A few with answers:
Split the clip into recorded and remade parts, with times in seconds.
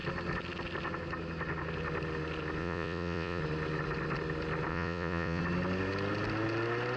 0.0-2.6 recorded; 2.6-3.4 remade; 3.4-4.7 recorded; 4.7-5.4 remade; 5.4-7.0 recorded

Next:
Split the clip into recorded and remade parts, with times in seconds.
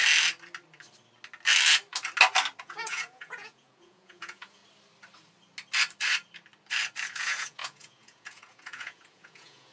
0.0-2.6 recorded; 2.6-4.6 remade; 4.6-7.1 recorded; 7.1-9.7 remade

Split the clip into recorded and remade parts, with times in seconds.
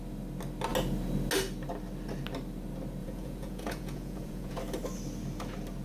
0.0-3.0 recorded; 3.0-4.6 remade; 4.6-5.8 recorded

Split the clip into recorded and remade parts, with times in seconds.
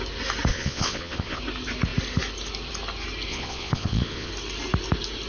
0.0-0.5 recorded; 0.5-1.4 remade; 1.4-3.3 recorded; 3.3-4.3 remade; 4.3-5.3 recorded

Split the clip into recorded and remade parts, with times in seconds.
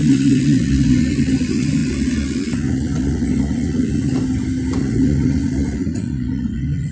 0.0-4.1 remade; 4.1-4.8 recorded; 4.8-6.9 remade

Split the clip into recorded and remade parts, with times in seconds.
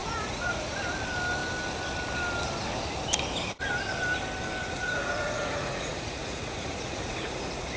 0.0-0.7 remade; 0.7-4.6 recorded; 4.6-7.8 remade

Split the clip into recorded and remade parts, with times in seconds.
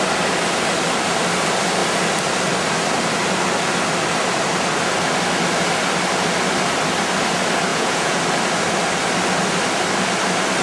0.0-7.7 recorded; 7.7-8.2 remade; 8.2-10.6 recorded